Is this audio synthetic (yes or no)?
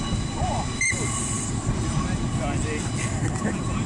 no